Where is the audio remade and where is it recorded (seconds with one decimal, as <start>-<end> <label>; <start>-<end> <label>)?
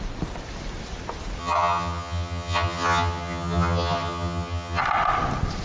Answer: 0.0-1.4 recorded; 1.4-4.8 remade; 4.8-5.6 recorded